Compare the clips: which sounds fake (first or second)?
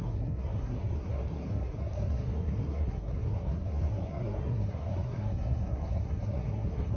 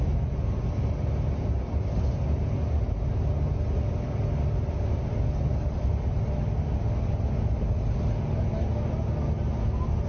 first